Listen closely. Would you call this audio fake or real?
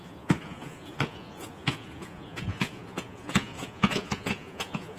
fake